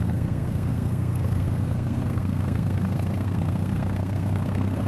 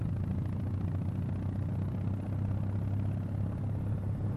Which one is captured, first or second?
second